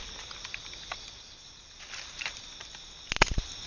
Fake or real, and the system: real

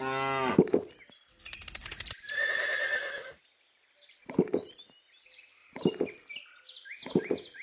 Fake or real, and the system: real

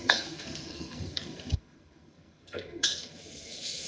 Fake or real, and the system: fake, codec, SNAC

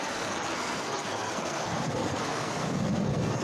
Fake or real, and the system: fake, codec, SNAC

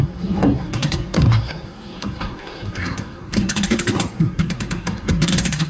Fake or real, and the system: fake, codec, SNAC